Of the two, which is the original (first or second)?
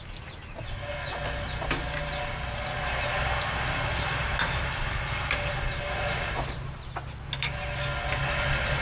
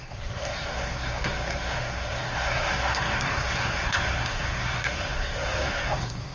first